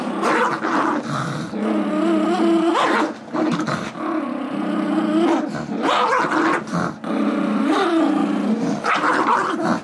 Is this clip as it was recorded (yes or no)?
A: yes